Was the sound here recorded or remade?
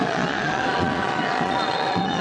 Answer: remade